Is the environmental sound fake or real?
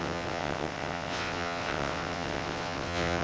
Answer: fake